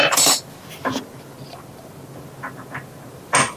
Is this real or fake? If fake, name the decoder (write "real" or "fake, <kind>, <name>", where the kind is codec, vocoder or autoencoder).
real